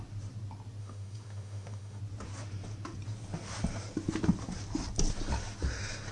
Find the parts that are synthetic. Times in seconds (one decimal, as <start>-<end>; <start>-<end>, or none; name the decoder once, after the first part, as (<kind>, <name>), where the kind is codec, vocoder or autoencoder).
0.8-2.0 (autoencoder, DAC-VAE)